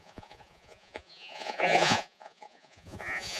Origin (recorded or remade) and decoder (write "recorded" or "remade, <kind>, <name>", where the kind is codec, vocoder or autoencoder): remade, vocoder, Vocos